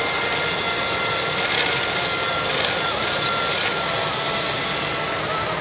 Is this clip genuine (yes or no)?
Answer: yes